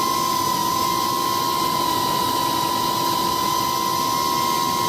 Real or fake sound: real